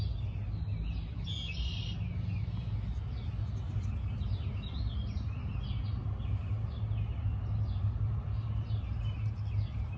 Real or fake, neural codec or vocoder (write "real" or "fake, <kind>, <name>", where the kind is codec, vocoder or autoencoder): real